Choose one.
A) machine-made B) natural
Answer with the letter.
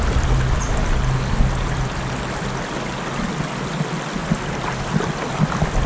B